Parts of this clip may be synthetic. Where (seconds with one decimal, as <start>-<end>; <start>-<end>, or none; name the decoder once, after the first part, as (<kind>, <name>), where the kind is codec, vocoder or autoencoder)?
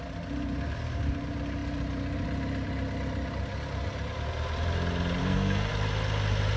5.2-5.7 (codec, SNAC)